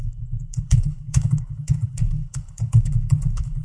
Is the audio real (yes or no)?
no